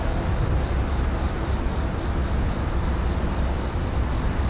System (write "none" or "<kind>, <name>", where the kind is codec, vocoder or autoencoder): none